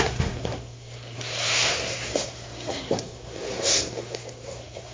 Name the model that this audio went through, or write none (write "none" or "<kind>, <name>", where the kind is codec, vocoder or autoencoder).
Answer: codec, SNAC